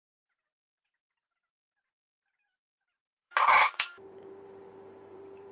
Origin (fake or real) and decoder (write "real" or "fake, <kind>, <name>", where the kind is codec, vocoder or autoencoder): fake, vocoder, BigVGAN v2